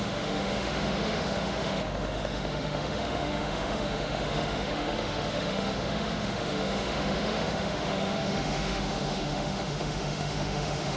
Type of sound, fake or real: fake